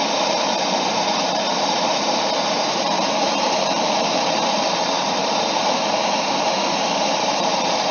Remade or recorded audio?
remade